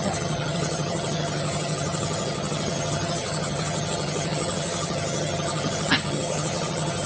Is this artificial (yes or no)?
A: yes